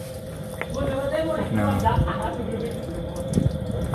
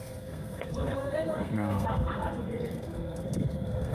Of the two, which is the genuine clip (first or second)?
first